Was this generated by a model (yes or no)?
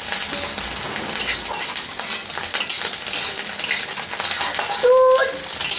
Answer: no